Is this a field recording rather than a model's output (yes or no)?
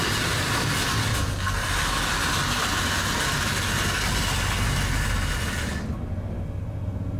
yes